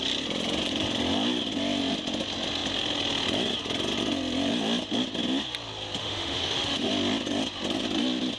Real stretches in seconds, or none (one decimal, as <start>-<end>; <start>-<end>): 0.0-6.0; 6.9-8.4